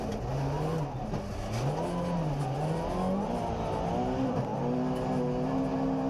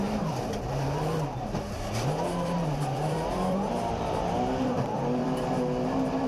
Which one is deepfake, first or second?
second